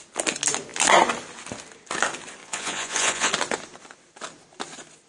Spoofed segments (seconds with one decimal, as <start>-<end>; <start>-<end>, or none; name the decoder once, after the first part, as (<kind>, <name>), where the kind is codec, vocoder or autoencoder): 2.4-3.3 (vocoder, Vocos)